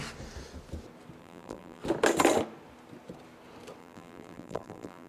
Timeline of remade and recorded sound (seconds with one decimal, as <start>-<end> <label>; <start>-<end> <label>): 0.0-1.2 recorded; 1.2-1.8 remade; 1.8-3.8 recorded; 3.8-5.1 remade